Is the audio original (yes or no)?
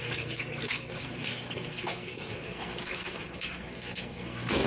no